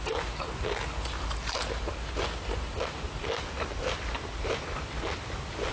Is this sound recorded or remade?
recorded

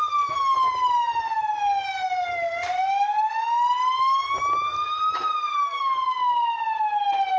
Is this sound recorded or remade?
recorded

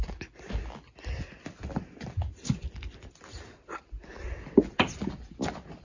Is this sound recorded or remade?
recorded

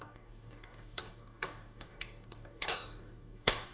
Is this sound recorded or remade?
remade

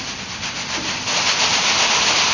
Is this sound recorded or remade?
recorded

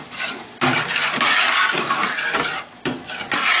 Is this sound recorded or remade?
recorded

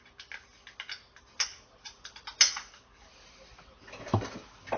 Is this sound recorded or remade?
recorded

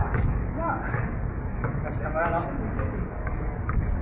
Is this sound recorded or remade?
remade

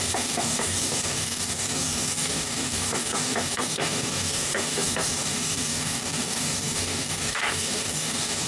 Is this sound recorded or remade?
remade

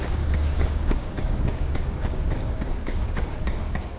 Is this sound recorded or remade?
remade